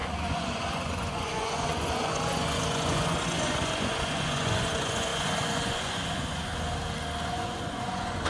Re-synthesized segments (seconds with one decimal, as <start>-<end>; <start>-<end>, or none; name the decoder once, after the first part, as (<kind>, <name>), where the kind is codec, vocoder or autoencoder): 0.0-6.5 (vocoder, Vocos); 7.3-8.3